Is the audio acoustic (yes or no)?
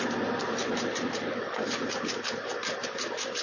yes